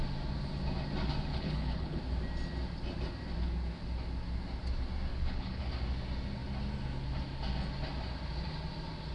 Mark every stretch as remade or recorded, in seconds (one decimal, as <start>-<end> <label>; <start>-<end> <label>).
0.0-1.3 recorded; 1.3-2.0 remade; 2.0-5.1 recorded; 5.1-5.7 remade; 5.7-9.1 recorded